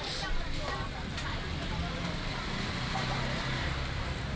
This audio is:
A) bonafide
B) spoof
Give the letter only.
B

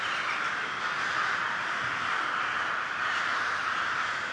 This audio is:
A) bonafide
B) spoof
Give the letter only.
A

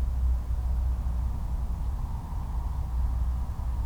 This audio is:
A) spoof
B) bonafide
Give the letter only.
B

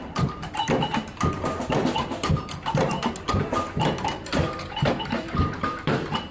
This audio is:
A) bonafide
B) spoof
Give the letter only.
B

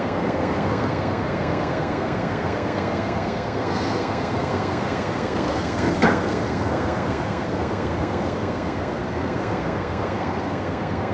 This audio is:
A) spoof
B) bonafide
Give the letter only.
A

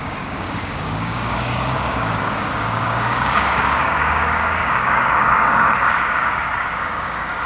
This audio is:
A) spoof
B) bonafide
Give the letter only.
A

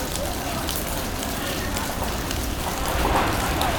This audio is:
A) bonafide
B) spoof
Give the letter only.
B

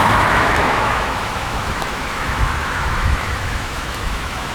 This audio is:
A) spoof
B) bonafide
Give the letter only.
A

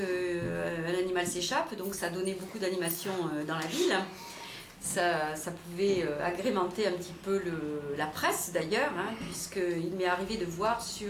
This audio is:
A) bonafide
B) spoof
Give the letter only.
A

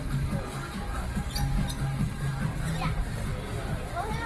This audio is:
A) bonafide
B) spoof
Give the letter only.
A